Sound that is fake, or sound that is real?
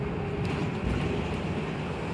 real